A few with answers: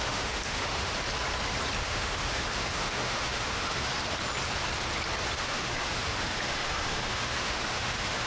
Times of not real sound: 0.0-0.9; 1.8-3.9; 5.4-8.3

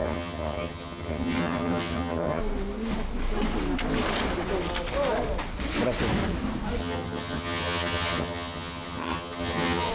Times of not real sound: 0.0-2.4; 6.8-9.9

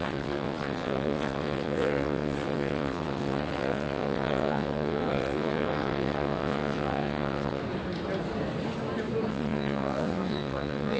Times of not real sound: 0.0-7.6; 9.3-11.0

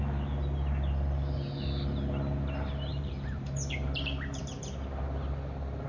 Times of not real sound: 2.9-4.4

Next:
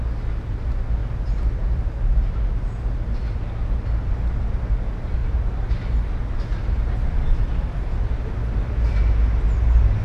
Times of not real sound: 1.0-1.8; 5.2-5.7; 6.5-9.0

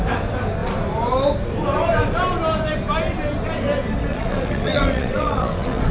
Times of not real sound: 4.1-5.9

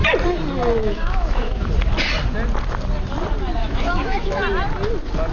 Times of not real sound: 0.8-1.7; 3.6-4.4